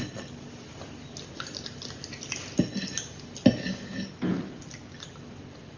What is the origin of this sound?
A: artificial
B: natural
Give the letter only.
B